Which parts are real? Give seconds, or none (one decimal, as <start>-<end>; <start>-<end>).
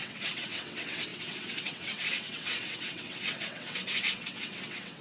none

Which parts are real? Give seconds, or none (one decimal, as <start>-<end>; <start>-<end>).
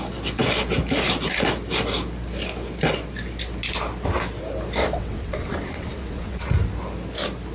0.0-4.8; 6.5-7.5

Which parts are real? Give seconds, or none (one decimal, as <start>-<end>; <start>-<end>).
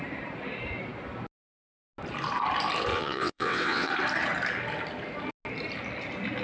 0.0-2.9; 3.9-6.4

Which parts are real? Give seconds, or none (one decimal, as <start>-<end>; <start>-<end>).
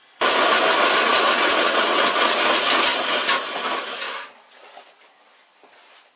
0.0-1.1; 2.4-6.2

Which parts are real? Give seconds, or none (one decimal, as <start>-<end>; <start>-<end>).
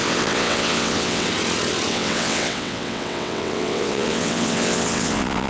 1.3-1.9